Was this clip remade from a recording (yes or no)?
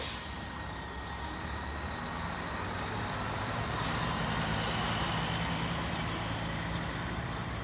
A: no